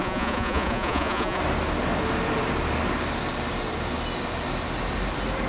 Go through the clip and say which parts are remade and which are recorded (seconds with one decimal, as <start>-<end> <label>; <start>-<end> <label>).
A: 0.0-1.4 remade; 1.4-5.5 recorded